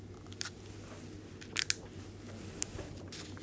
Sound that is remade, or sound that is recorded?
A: recorded